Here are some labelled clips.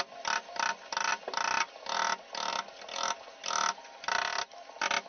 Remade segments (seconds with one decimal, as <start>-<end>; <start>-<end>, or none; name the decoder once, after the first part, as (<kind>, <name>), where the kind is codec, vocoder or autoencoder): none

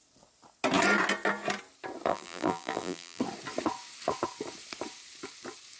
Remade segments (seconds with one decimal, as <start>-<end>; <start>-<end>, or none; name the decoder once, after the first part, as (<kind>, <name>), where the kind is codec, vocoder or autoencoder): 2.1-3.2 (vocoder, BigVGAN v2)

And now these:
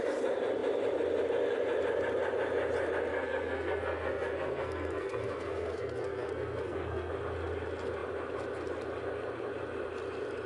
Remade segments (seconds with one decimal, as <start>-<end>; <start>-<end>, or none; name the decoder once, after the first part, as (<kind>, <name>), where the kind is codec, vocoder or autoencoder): 3.1-7.1 (codec, SNAC)

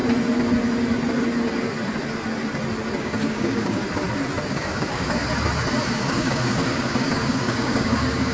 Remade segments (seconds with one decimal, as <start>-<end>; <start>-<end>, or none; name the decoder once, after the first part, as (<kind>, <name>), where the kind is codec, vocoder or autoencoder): 3.0-3.8 (codec, DAC); 4.5-5.2; 5.9-8.3

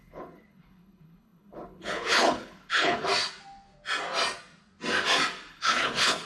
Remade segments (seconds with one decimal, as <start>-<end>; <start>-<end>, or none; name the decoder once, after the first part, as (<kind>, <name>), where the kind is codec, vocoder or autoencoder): 0.0-3.1 (codec, HILCodec); 5.5-6.3

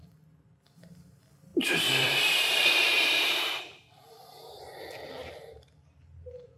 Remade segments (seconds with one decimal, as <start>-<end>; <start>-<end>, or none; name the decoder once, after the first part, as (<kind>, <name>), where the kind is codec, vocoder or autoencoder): 1.5-4.6 (vocoder, BigVGAN v2)

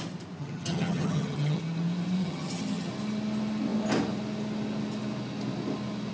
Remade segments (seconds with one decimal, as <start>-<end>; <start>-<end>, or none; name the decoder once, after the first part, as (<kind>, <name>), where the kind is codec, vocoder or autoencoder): 0.4-1.6 (vocoder, HiFi-GAN); 2.2-2.9

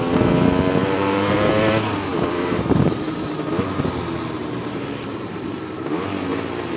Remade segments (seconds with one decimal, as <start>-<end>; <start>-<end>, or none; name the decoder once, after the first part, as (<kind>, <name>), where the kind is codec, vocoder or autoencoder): 0.8-1.5 (vocoder, BigVGAN v2); 2.1-3.5; 4.4-5.6